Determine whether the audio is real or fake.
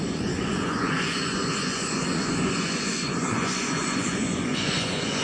fake